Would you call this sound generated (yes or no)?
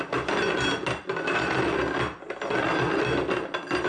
no